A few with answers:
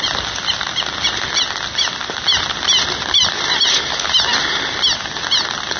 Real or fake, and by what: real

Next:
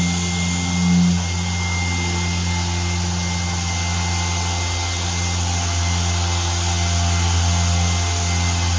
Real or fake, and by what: real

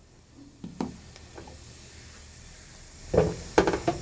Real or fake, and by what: real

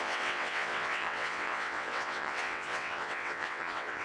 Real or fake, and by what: fake, vocoder, WaveNeXt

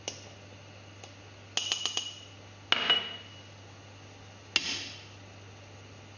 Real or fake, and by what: real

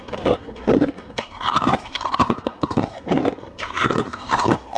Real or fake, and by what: fake, codec, SNAC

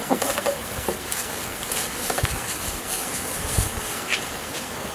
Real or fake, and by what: fake, codec, SNAC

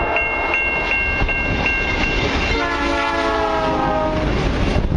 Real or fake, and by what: real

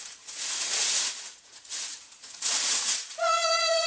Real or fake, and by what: fake, vocoder, Vocos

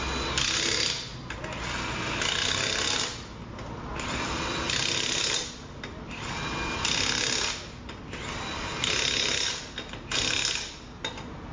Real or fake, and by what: real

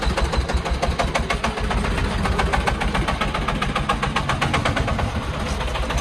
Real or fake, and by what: real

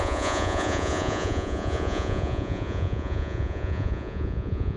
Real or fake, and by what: fake, vocoder, Vocos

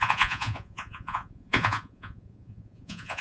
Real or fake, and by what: fake, vocoder, Vocos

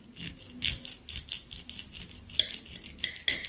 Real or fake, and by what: real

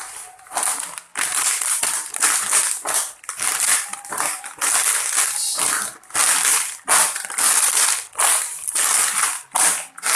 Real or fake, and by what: real